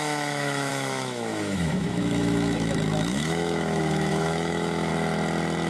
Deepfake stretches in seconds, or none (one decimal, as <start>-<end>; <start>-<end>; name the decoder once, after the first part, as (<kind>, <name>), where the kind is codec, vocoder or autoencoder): 0.0-4.9 (autoencoder, DAC-VAE)